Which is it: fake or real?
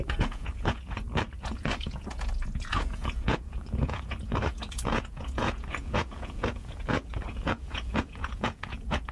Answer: fake